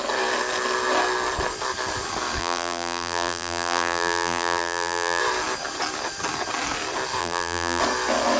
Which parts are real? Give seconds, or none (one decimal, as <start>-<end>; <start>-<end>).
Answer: 0.0-2.4; 5.2-7.2; 7.8-8.4